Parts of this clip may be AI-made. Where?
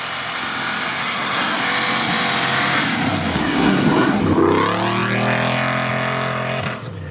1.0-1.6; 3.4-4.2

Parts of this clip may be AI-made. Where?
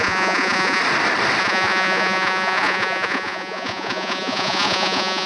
0.0-0.8; 1.4-5.3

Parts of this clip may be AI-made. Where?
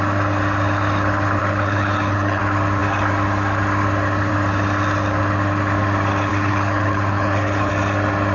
1.4-2.4; 6.3-7.7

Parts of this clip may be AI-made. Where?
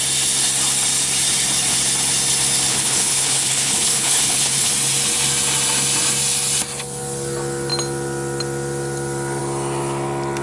2.7-4.7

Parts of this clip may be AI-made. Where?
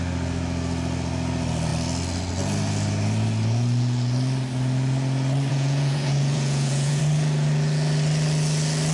5.5-7.0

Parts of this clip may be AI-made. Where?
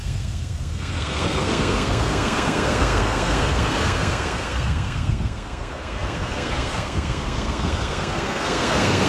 0.0-9.1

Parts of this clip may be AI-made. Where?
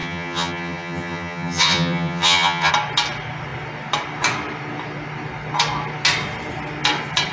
0.0-2.7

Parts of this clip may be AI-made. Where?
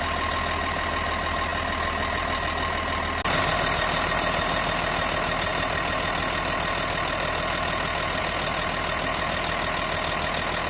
none